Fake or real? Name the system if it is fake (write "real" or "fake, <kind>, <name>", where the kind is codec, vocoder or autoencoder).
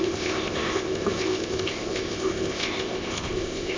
fake, codec, ZipCodec